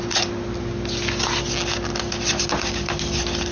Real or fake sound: real